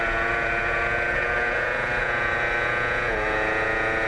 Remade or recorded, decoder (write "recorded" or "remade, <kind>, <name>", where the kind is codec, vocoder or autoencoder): remade, vocoder, Vocos